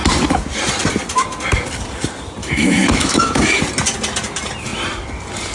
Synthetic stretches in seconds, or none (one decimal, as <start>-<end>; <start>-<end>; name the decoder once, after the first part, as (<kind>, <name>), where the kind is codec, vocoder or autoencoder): 2.4-3.6 (autoencoder, DAC-VAE)